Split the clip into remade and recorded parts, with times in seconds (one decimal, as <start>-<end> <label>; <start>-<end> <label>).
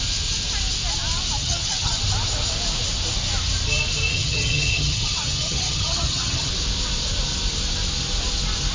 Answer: 0.0-1.4 recorded; 1.4-2.0 remade; 2.0-4.1 recorded; 4.1-6.5 remade; 6.5-8.7 recorded